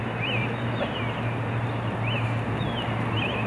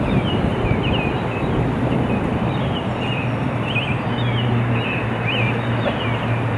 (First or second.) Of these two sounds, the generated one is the second